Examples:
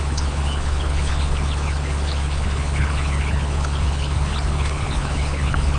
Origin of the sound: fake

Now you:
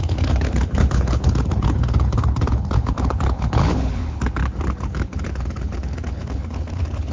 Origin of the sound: fake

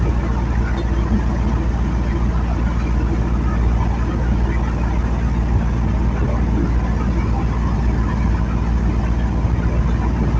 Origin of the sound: real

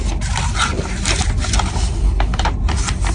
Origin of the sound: real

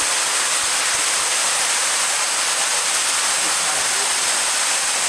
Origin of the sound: real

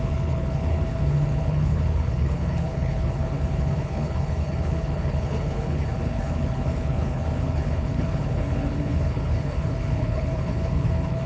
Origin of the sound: fake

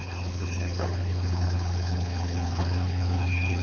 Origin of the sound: fake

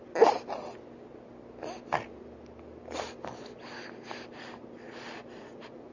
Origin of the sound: real